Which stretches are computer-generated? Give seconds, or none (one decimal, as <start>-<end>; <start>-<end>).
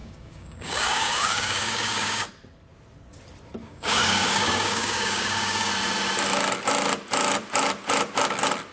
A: 0.0-2.3; 3.6-5.7